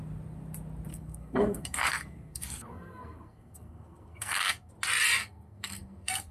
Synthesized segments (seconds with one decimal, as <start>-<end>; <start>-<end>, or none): 0.9-4.7; 5.2-6.3